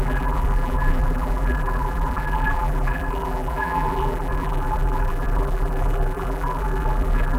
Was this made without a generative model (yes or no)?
no